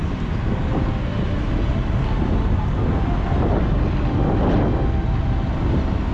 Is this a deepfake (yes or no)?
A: no